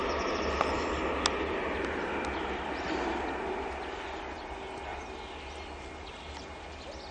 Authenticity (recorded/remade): recorded